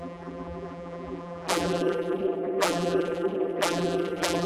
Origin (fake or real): fake